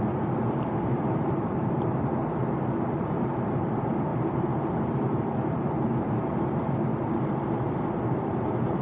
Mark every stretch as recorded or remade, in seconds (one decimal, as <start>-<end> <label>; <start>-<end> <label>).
0.0-2.2 remade; 2.2-3.0 recorded; 3.0-6.9 remade; 6.9-8.0 recorded; 8.0-8.8 remade